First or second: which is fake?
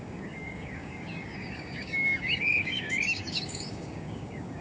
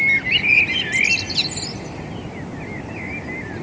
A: first